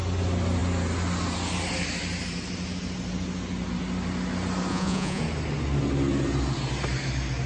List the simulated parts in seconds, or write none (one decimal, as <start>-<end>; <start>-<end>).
4.7-5.2